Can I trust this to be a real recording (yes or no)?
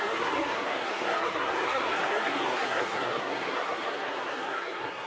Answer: no